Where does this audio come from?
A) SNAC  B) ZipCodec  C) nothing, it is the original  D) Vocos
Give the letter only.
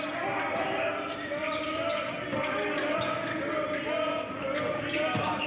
C